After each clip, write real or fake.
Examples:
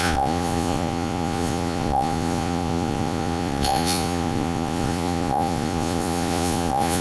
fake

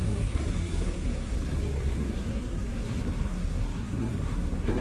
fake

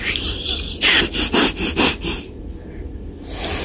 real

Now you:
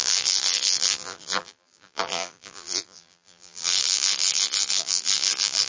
fake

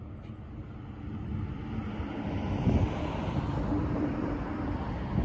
real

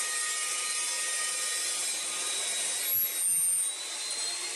real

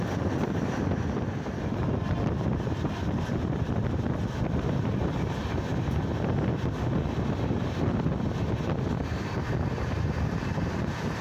real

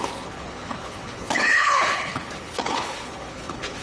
fake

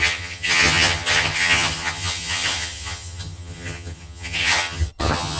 fake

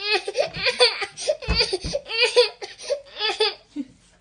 real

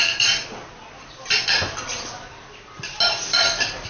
real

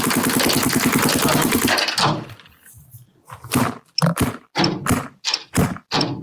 real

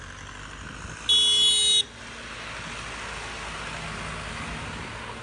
real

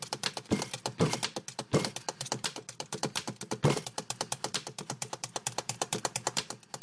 fake